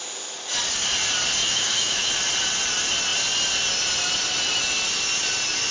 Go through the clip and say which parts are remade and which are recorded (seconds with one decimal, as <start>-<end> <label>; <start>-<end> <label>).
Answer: 0.0-1.4 recorded; 1.4-2.1 remade; 2.1-5.7 recorded

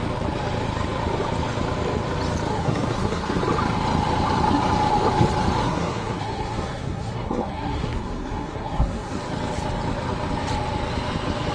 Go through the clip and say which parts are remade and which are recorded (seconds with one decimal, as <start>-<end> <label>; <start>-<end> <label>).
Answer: 0.0-2.5 recorded; 2.5-3.4 remade; 3.4-5.6 recorded; 5.6-9.1 remade; 9.1-11.5 recorded

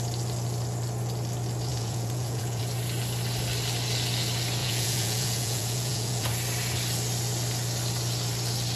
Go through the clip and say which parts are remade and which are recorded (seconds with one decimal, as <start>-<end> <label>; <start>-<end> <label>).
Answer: 0.0-1.7 recorded; 1.7-2.6 remade; 2.6-4.6 recorded; 4.6-6.3 remade; 6.3-8.8 recorded

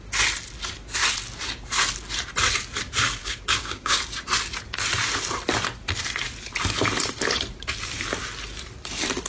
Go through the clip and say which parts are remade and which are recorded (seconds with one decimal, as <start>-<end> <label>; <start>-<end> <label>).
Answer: 0.0-3.2 recorded; 3.2-4.0 remade; 4.0-9.3 recorded